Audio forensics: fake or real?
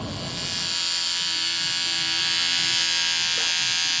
real